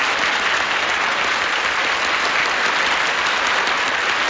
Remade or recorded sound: recorded